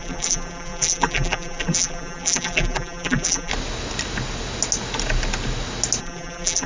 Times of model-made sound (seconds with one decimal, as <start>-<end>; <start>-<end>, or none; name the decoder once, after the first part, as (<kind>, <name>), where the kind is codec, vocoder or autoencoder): 0.0-3.5 (vocoder, BigVGAN v2); 6.0-6.7